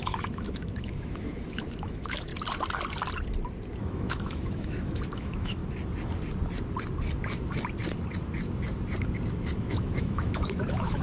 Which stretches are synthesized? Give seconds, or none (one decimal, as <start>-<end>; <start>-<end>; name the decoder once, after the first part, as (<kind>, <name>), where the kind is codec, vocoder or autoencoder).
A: 0.0-2.3 (autoencoder, DAC-VAE); 3.8-5.6; 9.6-11.0